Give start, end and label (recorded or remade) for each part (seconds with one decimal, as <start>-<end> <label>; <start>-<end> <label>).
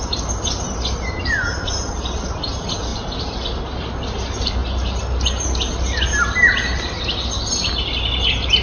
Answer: 0.0-8.6 recorded